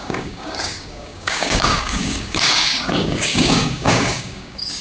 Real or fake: fake